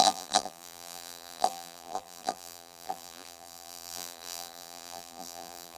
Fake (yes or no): yes